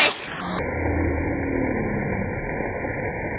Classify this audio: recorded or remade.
recorded